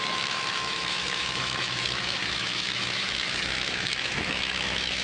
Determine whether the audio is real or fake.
fake